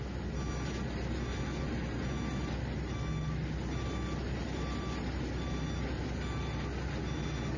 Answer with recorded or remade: recorded